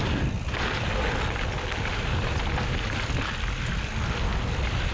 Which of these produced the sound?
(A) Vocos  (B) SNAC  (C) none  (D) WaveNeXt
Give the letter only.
C